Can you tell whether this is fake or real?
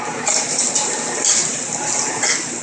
real